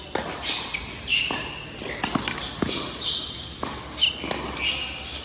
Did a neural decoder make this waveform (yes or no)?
no